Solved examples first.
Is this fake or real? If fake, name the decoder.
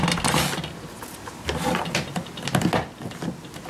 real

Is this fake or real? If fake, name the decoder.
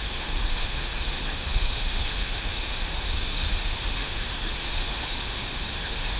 fake, autoencoder, DAC-VAE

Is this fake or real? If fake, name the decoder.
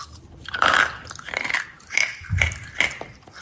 real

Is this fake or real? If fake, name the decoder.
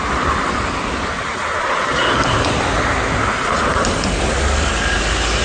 real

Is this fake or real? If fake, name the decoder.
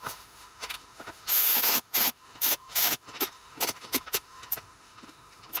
fake, autoencoder, DAC-VAE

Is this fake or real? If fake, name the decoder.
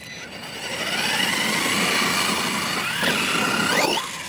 real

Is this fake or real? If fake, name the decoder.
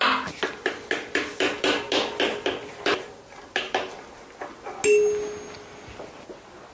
real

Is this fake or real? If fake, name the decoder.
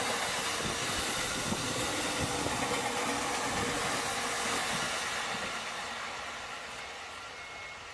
real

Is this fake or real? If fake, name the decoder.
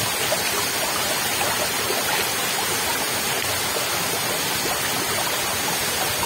real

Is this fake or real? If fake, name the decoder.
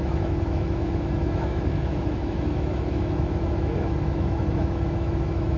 fake, autoencoder, DAC-VAE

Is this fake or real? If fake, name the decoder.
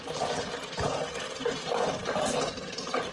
real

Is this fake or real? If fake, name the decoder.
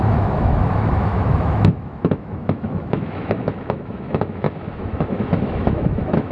fake, autoencoder, DAC-VAE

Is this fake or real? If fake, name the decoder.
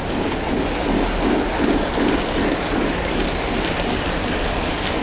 real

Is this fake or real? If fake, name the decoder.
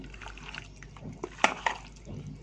real